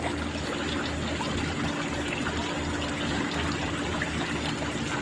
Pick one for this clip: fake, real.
real